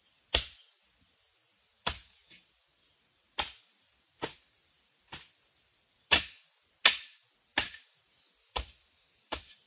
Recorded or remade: recorded